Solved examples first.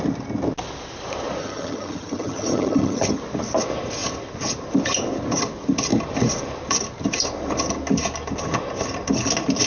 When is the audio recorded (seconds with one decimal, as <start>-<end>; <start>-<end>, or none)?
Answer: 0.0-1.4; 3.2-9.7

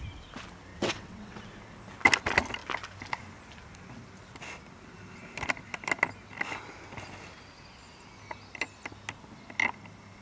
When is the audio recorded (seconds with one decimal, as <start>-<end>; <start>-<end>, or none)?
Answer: 0.0-0.7; 1.4-10.2

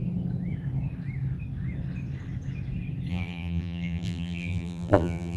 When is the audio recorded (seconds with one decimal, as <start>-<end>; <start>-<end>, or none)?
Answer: 0.0-3.1

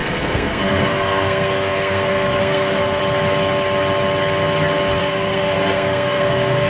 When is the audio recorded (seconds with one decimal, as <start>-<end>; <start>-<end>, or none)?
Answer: 3.0-5.0

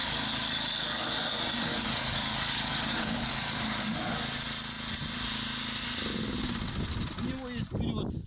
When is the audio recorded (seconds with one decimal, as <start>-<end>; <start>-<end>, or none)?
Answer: 1.1-1.7; 3.9-8.3

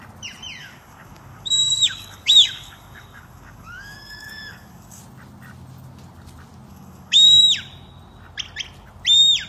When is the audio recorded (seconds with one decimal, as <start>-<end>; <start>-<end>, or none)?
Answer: 0.0-0.6; 5.0-6.7; 7.4-9.5

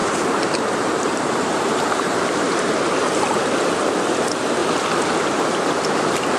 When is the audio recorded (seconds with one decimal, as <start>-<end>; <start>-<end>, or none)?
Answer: 3.5-6.4

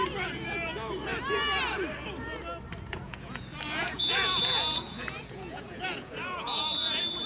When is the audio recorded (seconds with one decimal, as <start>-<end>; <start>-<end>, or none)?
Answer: 0.7-2.9